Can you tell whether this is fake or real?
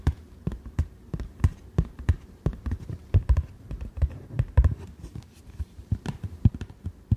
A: fake